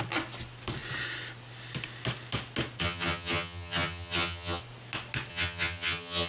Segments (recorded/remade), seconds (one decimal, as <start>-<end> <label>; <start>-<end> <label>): 0.0-2.8 recorded; 2.8-4.6 remade; 4.6-5.3 recorded; 5.3-6.3 remade